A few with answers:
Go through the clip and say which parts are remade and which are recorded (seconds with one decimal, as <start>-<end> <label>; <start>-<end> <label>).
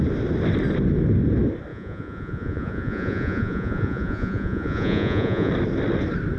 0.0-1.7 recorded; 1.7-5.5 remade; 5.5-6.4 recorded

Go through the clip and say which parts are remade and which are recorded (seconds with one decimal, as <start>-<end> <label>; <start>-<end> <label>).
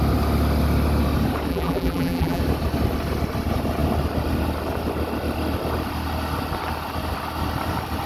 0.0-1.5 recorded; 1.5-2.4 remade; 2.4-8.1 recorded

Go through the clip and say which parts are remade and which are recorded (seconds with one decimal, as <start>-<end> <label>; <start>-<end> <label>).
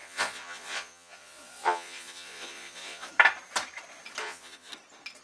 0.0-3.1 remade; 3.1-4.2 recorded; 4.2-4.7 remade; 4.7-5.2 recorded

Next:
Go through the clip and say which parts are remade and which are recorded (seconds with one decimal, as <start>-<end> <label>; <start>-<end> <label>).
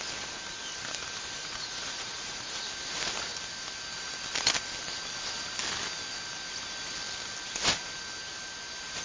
0.0-1.4 recorded; 1.4-2.6 remade; 2.6-9.0 recorded